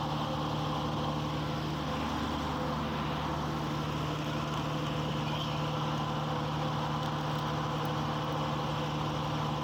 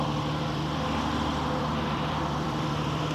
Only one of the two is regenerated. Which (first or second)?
second